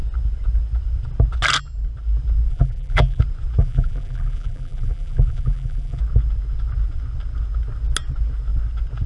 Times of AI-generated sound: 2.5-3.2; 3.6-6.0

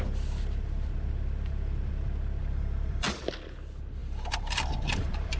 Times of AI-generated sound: 2.4-3.2; 4.0-5.4